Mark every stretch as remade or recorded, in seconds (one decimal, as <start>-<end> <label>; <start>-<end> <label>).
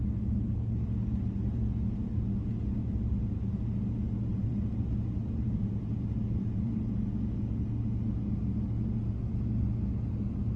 0.0-2.8 recorded; 2.8-3.4 remade; 3.4-4.3 recorded; 4.3-6.8 remade; 6.8-10.6 recorded